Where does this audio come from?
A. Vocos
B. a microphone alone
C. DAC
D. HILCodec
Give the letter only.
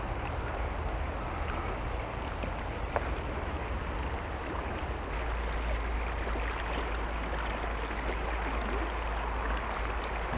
B